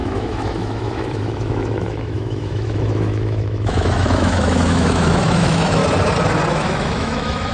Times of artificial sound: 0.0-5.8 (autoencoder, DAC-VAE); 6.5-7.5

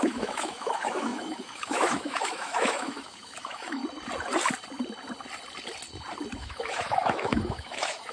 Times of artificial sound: 0.0-3.8 (autoencoder, DAC-VAE); 6.4-8.1